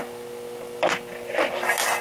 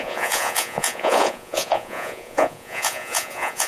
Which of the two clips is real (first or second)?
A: first